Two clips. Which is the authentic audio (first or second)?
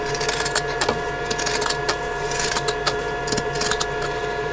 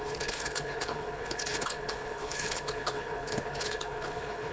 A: first